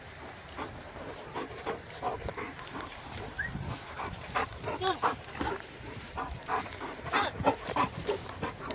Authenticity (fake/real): fake